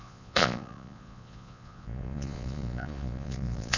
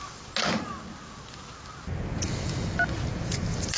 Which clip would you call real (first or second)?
second